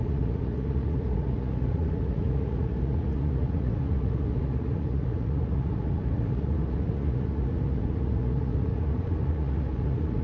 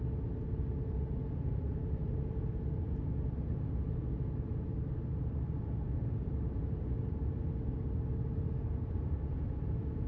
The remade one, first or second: first